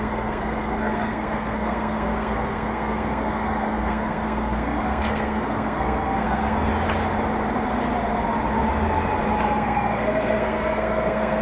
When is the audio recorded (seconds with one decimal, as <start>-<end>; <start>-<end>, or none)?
6.7-9.4